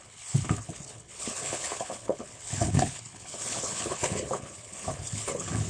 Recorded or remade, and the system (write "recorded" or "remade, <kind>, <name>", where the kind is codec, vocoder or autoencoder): remade, codec, HILCodec